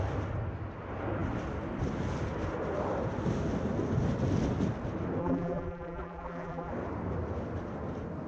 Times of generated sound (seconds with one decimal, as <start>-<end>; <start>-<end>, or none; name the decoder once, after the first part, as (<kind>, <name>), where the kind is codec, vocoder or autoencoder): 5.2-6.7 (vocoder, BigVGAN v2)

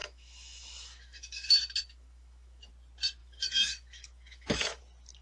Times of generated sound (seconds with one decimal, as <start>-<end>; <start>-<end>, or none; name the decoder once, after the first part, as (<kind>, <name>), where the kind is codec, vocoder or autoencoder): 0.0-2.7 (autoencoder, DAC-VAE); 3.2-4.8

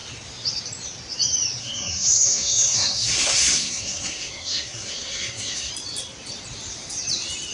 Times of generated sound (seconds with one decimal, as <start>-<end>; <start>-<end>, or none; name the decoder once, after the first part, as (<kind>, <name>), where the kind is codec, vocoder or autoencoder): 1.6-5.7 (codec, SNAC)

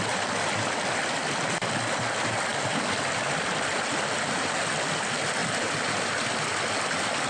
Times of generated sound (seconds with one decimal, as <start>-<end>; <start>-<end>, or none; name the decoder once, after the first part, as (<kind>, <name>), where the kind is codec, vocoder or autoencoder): none

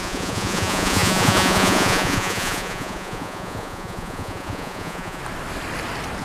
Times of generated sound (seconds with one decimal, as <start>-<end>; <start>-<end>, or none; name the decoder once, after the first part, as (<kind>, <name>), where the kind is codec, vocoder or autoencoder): 0.0-5.2 (vocoder, Vocos)

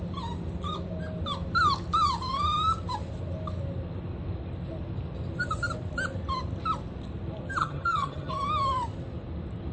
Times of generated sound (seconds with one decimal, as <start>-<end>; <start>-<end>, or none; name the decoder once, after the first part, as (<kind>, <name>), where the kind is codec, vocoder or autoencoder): 7.6-8.3 (vocoder, HiFi-GAN)

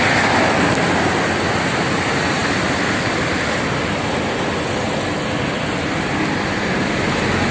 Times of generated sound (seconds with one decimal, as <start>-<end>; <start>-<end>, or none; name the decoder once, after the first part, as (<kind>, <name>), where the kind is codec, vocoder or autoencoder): none

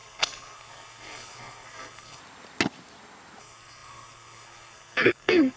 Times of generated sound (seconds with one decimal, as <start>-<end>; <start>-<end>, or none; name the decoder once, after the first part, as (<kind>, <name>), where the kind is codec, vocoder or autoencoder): 0.0-2.2 (codec, SNAC); 3.4-5.6